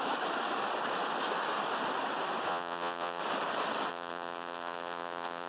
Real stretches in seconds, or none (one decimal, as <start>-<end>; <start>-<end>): 0.0-2.5; 3.2-3.9